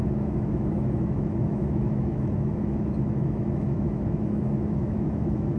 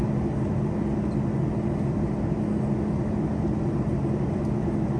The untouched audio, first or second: second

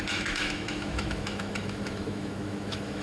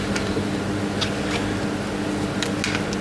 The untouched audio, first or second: second